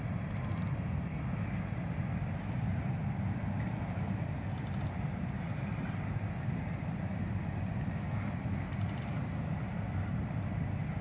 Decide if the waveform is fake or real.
real